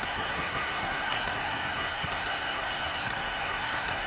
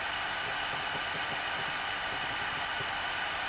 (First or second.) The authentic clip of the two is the second